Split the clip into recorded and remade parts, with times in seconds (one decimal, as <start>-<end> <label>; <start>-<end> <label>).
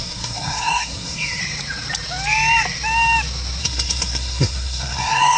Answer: 0.0-1.4 remade; 1.4-3.6 recorded; 3.6-5.4 remade